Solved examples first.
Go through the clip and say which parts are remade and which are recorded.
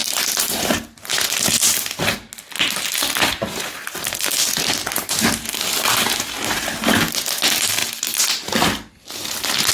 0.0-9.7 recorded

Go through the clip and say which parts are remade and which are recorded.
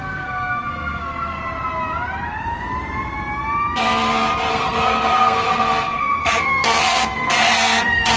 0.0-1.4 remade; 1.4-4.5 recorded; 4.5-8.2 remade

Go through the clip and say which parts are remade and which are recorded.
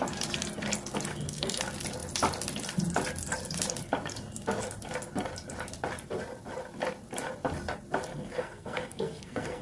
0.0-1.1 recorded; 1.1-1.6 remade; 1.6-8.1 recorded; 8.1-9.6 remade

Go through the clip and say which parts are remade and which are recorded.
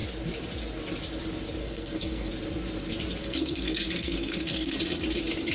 0.0-1.6 recorded; 1.6-2.3 remade; 2.3-3.2 recorded; 3.2-4.8 remade; 4.8-5.5 recorded